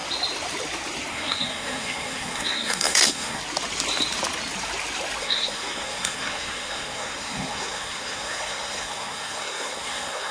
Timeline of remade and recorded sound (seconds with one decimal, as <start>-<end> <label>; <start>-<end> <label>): 0.0-1.1 recorded; 1.1-3.4 remade; 3.4-5.2 recorded; 5.2-10.3 remade